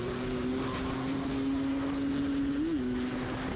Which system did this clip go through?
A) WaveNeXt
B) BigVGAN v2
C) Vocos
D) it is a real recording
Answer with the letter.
D